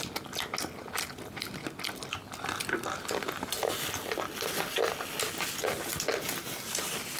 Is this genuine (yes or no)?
yes